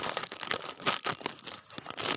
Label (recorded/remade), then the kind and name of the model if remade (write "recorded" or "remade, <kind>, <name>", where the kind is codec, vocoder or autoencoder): recorded